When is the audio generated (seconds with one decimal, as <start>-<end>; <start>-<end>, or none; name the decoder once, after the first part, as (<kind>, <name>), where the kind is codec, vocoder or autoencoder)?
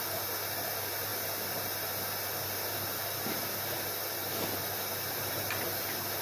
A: none